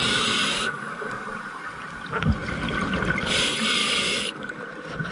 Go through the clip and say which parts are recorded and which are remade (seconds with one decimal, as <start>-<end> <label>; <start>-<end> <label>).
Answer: 0.0-0.5 recorded; 0.5-1.1 remade; 1.1-3.8 recorded; 3.8-4.6 remade; 4.6-5.1 recorded